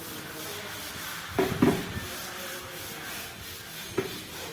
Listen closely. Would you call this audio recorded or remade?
recorded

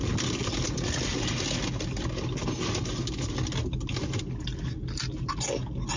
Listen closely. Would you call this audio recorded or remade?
recorded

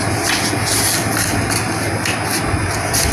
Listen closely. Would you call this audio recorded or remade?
recorded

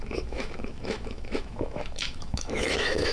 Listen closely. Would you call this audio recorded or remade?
remade